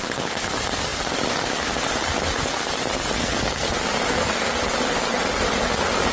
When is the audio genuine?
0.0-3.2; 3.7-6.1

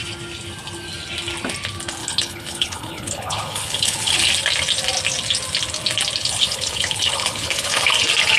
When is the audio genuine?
0.0-2.0; 4.3-6.2; 7.9-8.4

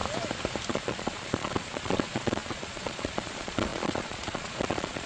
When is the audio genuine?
0.0-0.7

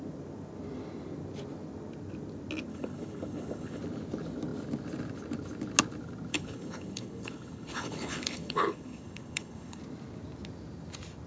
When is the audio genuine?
0.0-2.7; 3.8-6.3; 9.8-11.3

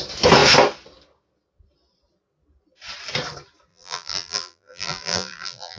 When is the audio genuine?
0.0-3.7

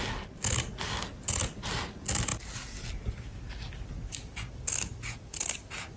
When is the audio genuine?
0.0-6.0

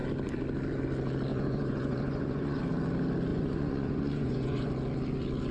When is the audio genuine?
0.0-1.3; 2.6-3.3; 4.7-5.5